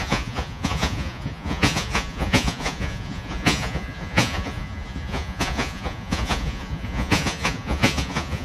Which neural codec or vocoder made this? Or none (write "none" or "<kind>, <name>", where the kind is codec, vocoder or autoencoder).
vocoder, Vocos